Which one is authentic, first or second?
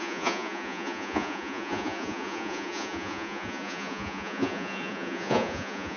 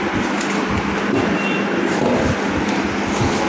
second